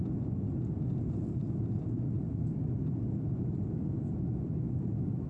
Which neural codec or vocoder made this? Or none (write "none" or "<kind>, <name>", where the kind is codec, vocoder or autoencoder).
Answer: none